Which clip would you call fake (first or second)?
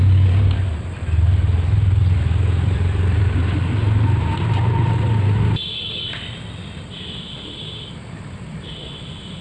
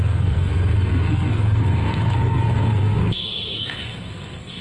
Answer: second